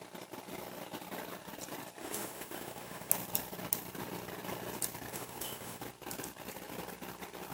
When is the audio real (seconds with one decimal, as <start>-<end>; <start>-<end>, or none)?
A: 0.0-2.0; 3.1-5.1; 5.8-7.5